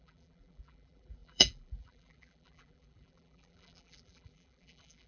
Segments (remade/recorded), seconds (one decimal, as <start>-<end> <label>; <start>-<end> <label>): 0.0-5.1 remade